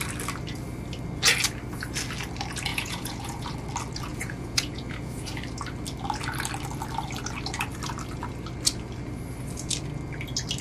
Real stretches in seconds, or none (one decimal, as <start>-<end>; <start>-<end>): 0.0-2.7; 3.5-4.1; 5.3-10.6

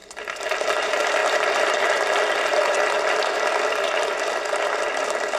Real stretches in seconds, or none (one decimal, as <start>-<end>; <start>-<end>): 0.0-5.4

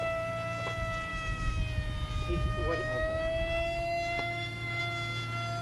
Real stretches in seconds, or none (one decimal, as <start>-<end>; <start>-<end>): 0.0-1.1; 1.6-2.6; 4.8-5.6

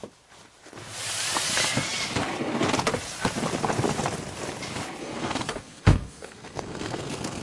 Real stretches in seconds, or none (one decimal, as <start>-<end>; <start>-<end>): 0.0-5.0

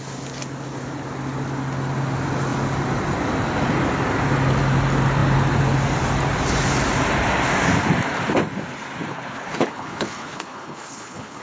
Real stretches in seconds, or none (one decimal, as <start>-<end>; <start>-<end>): 0.0-9.1

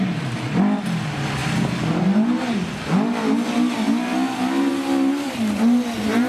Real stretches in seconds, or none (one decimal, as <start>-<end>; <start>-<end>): 0.0-6.3